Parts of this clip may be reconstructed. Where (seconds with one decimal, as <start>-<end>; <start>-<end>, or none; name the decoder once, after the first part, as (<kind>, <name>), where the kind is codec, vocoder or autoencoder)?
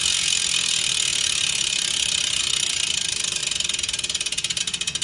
1.1-2.4 (vocoder, BigVGAN v2); 3.4-4.6